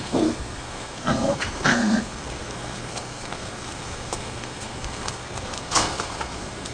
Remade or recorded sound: remade